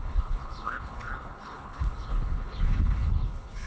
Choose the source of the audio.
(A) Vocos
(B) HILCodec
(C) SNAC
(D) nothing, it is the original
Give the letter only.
B